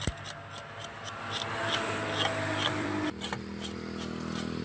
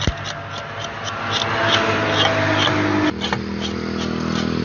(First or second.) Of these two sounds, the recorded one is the second